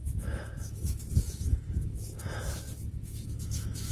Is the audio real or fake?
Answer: fake